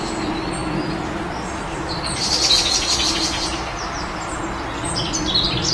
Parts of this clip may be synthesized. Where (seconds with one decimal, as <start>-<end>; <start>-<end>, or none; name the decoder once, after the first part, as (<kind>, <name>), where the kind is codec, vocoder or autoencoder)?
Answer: 0.6-2.3 (vocoder, BigVGAN v2); 3.7-4.4